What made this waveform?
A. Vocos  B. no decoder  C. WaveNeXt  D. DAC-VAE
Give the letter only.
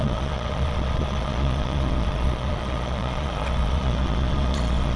A